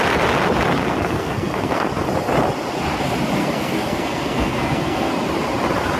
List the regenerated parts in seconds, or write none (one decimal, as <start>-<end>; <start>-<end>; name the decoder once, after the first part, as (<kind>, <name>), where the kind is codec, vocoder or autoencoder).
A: 0.8-1.9 (codec, SNAC); 3.4-5.1